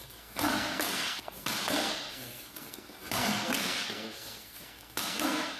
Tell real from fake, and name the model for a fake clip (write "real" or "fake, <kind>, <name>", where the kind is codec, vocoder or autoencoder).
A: fake, codec, SNAC